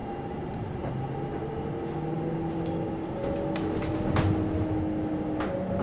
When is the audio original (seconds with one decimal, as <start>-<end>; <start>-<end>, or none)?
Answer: 0.9-5.8